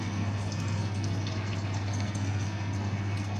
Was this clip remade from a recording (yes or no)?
yes